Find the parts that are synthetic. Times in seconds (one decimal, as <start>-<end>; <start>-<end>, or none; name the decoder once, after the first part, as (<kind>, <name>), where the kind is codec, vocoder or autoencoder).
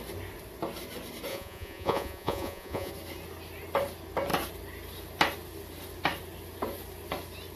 1.3-2.9 (vocoder, Vocos)